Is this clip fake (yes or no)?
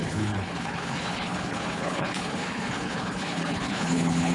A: yes